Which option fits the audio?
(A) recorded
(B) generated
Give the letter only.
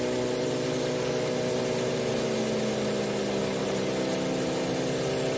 A